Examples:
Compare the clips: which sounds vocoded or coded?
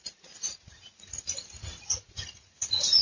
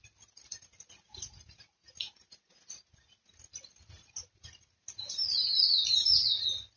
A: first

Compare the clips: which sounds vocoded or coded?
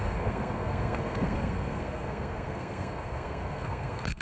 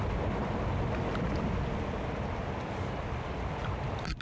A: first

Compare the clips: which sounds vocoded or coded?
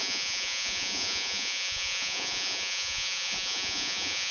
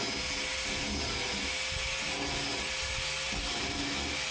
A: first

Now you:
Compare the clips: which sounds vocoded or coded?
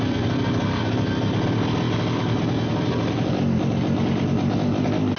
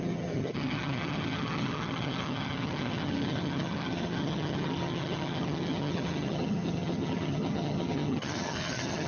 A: second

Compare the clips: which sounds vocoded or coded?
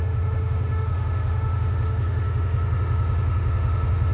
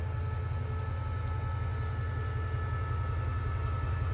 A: first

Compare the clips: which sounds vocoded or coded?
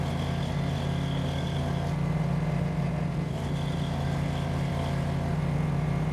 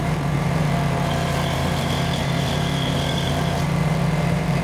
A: second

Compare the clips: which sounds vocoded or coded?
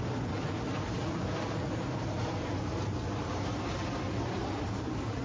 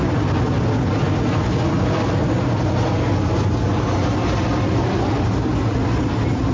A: first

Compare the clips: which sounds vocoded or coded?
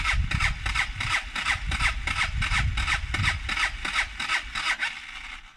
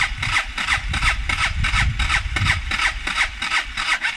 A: second